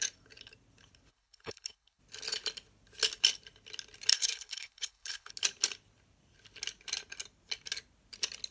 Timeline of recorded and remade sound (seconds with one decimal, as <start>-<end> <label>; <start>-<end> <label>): 0.0-1.1 recorded; 1.1-2.0 remade; 2.0-4.1 recorded; 4.1-5.3 remade; 5.3-8.5 recorded